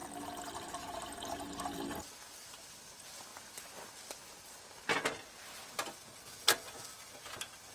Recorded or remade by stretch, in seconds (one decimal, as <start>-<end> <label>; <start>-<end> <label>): 0.0-7.7 recorded

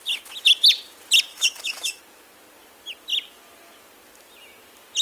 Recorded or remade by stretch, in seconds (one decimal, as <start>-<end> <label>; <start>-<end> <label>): 0.0-1.3 recorded; 1.3-2.0 remade; 2.0-5.0 recorded

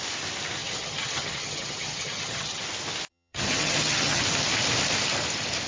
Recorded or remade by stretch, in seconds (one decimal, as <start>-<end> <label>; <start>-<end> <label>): 0.0-0.6 recorded; 0.6-2.6 remade; 2.6-3.1 recorded; 3.1-4.2 remade; 4.2-5.7 recorded

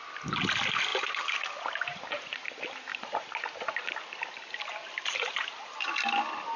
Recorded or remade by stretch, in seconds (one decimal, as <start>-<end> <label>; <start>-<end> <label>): 0.0-0.9 recorded; 0.9-2.0 remade; 2.0-4.7 recorded; 4.7-5.9 remade; 5.9-6.6 recorded

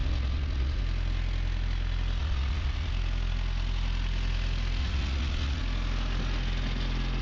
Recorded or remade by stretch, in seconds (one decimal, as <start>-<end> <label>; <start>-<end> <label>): 0.0-0.8 remade; 0.8-2.2 recorded; 2.2-2.9 remade; 2.9-4.8 recorded; 4.8-5.6 remade; 5.6-7.2 recorded

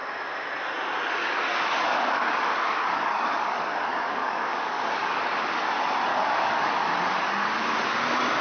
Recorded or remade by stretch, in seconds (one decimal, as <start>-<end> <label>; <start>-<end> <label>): 0.0-1.2 recorded; 1.2-5.2 remade; 5.2-6.1 recorded; 6.1-7.6 remade; 7.6-8.4 recorded

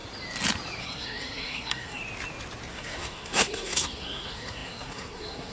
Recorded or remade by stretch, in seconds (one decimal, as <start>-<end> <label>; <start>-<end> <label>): 0.0-0.8 recorded; 0.8-2.0 remade; 2.0-2.7 recorded; 2.7-5.5 remade

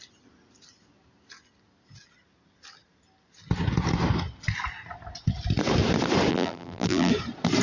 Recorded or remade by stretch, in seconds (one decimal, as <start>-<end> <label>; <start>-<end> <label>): 0.0-6.3 recorded; 6.3-7.1 remade; 7.1-7.6 recorded